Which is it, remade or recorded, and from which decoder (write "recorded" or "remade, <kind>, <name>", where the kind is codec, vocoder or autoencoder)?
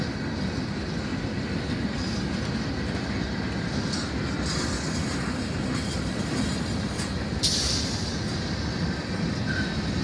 recorded